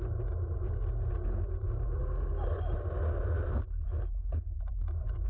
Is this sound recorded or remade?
recorded